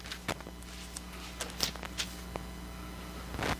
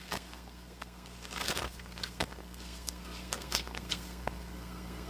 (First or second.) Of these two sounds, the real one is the first